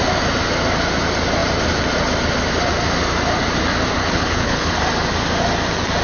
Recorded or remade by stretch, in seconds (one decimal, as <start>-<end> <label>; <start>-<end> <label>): 0.0-4.0 recorded; 4.0-4.8 remade; 4.8-6.0 recorded